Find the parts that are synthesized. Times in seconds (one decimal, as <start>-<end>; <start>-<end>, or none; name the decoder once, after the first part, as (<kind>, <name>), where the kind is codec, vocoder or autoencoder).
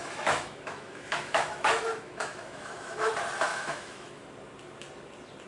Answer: 0.0-3.1 (autoencoder, DAC-VAE); 3.5-4.2